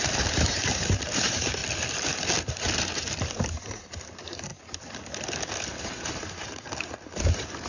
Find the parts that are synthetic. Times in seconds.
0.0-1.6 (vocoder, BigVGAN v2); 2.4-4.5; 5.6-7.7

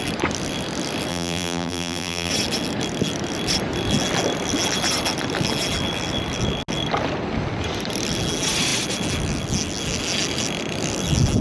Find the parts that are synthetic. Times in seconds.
1.1-2.3 (vocoder, BigVGAN v2)

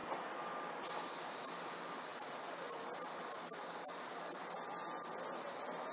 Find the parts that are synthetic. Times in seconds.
none

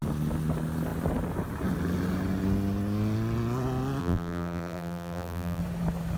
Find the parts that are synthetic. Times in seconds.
4.0-5.6 (vocoder, BigVGAN v2)

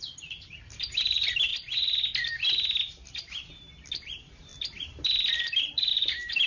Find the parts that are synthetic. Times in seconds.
0.0-1.5 (vocoder, BigVGAN v2); 3.9-4.5; 5.3-6.5

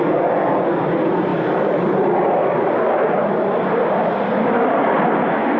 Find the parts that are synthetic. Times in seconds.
1.3-4.7 (vocoder, BigVGAN v2)

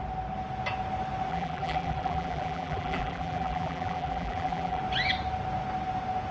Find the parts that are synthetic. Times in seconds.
1.3-4.8 (vocoder, BigVGAN v2)

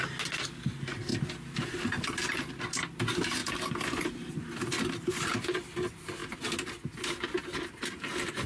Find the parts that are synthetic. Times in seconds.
1.1-2.5 (vocoder, BigVGAN v2); 3.4-5.1; 6.2-6.7